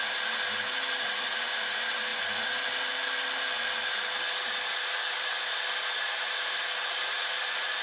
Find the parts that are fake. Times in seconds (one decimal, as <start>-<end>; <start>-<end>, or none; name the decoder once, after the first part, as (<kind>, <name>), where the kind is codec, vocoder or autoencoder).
none